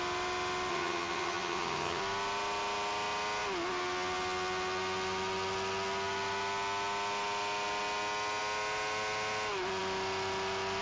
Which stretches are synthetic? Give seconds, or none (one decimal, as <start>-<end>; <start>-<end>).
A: 0.7-2.0